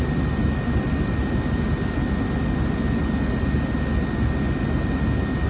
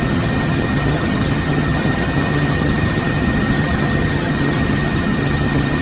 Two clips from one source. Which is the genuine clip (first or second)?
first